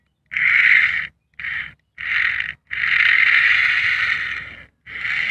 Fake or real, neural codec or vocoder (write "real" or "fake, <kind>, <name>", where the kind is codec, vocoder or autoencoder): real